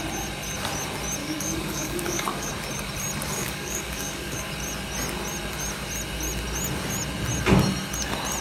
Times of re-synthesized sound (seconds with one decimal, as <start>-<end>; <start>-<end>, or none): 1.2-2.5; 3.4-4.5